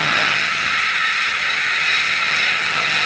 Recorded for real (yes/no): no